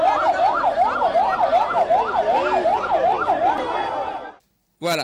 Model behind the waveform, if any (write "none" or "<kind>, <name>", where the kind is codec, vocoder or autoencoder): none